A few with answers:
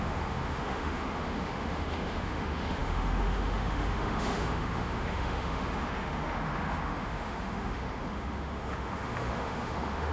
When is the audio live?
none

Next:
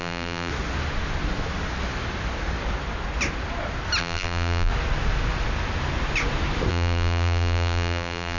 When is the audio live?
0.5-4.0; 4.7-6.7

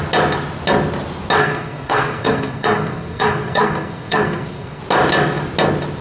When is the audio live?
0.0-1.4; 4.8-6.0

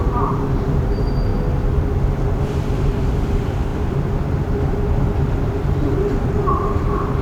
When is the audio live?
1.3-2.4

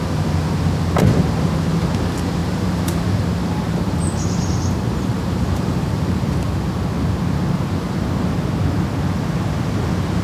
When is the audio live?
0.0-2.4; 6.2-10.2

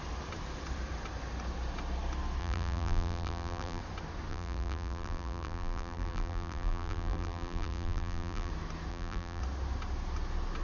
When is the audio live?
0.0-2.4; 3.8-4.3; 8.5-8.9; 9.4-10.6

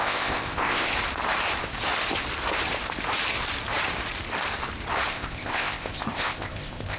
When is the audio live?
0.9-5.1

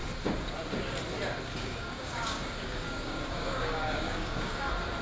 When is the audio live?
0.0-1.6; 4.6-5.0